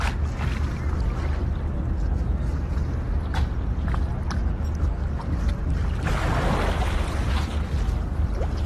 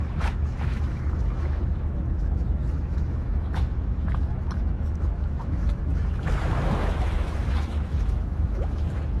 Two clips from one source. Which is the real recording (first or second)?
first